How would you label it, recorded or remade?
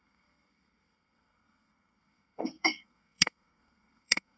remade